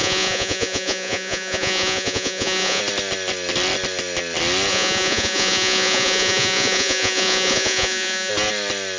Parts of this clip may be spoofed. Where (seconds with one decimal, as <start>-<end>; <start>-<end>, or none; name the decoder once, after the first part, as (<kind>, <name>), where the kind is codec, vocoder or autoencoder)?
0.0-2.8 (vocoder, Vocos); 4.7-8.3